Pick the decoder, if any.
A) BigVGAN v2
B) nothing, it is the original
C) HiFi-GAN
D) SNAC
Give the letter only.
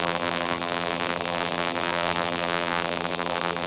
A